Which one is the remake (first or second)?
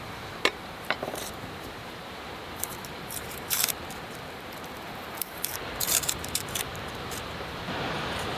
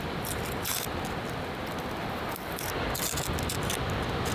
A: first